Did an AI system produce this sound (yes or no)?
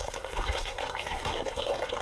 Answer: yes